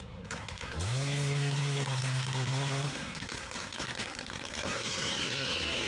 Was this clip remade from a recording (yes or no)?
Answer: yes